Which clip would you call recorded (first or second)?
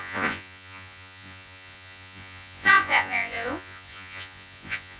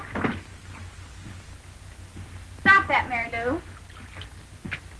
second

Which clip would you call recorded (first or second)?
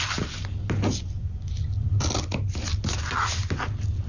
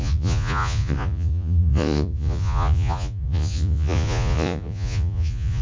first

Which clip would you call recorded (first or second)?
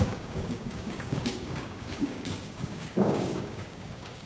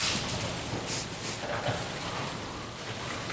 second